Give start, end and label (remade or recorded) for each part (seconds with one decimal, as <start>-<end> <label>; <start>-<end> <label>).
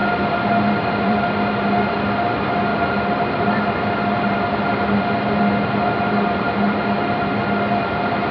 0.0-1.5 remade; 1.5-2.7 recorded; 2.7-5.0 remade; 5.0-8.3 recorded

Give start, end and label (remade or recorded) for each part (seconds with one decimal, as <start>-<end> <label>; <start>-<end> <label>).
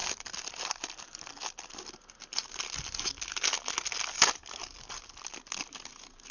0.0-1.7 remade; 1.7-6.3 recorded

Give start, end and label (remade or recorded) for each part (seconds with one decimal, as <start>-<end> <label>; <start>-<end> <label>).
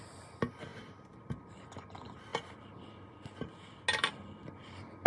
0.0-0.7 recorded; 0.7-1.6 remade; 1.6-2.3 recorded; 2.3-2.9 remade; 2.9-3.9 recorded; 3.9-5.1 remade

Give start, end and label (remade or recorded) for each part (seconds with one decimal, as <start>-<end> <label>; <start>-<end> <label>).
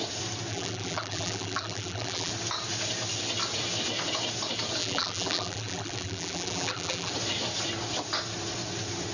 0.0-0.5 recorded; 0.5-2.3 remade; 2.3-4.8 recorded; 4.8-7.1 remade; 7.1-9.1 recorded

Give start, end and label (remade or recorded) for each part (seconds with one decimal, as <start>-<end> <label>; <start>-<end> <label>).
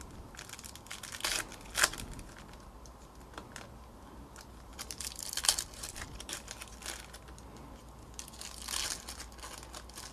0.0-4.7 recorded; 4.7-6.5 remade; 6.5-10.1 recorded